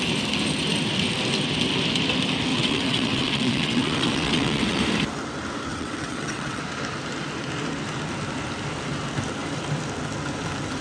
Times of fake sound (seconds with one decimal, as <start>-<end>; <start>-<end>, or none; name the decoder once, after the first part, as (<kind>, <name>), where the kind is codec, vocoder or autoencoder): 2.5-4.8 (vocoder, WaveNeXt); 5.7-6.6